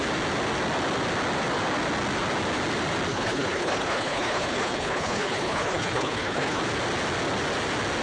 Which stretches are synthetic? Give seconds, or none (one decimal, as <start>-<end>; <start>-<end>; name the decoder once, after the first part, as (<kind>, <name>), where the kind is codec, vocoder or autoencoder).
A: 3.1-6.6 (codec, HILCodec)